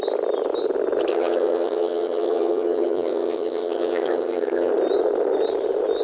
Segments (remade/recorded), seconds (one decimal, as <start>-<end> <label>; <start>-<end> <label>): 0.0-1.1 recorded; 1.1-4.7 remade; 4.7-6.0 recorded